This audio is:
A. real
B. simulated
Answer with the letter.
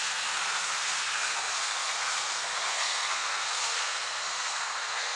B